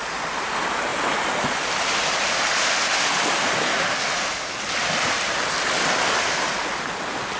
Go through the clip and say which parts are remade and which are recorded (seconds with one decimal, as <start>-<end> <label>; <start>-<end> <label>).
0.0-7.4 recorded